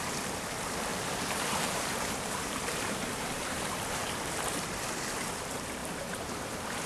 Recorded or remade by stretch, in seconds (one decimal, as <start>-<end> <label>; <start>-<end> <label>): 0.0-0.9 recorded; 0.9-4.4 remade; 4.4-5.8 recorded; 5.8-6.9 remade